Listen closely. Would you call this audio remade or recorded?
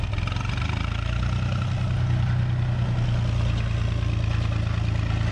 recorded